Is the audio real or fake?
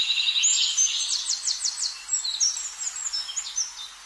real